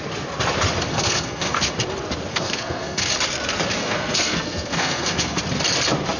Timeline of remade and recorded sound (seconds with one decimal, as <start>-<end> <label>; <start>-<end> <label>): 0.0-0.9 recorded; 0.9-1.7 remade; 1.7-2.3 recorded; 2.3-3.1 remade; 3.1-3.8 recorded; 3.8-5.4 remade; 5.4-6.2 recorded

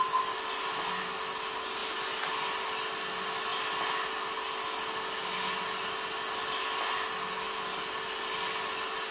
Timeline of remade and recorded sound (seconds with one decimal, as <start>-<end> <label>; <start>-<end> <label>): 0.0-9.1 recorded

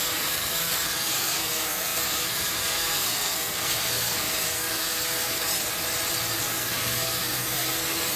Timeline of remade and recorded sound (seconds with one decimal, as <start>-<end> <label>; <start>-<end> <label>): 0.0-5.5 remade; 5.5-6.4 recorded; 6.4-8.2 remade

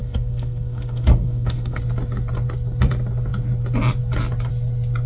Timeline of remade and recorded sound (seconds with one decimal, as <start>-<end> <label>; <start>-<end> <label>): 0.0-1.8 remade; 1.8-5.1 recorded